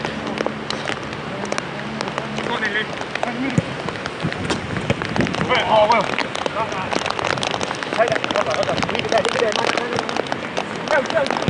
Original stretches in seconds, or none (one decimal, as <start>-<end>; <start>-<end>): 0.0-11.5